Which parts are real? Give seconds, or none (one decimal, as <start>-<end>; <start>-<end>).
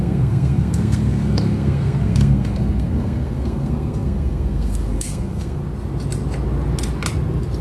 5.6-7.6